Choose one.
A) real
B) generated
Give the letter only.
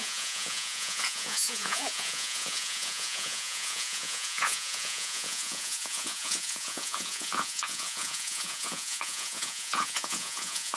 B